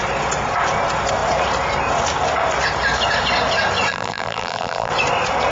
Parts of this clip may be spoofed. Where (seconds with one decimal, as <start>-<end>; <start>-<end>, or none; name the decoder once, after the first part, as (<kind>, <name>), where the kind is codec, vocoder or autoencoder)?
3.9-4.9 (vocoder, BigVGAN v2)

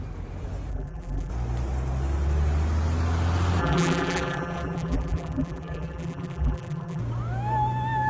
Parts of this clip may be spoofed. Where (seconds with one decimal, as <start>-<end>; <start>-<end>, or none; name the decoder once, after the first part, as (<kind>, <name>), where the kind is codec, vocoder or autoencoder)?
0.7-1.3 (vocoder, BigVGAN v2); 3.6-7.0

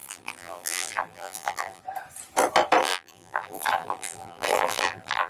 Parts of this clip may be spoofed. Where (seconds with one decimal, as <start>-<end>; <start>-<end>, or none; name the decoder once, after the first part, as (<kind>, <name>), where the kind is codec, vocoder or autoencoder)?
0.0-1.8 (vocoder, BigVGAN v2); 2.8-5.3